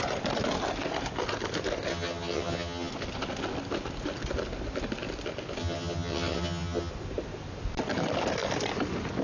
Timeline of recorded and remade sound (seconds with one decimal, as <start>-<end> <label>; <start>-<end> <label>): 0.0-1.9 recorded; 1.9-2.9 remade; 2.9-5.6 recorded; 5.6-6.9 remade; 6.9-9.2 recorded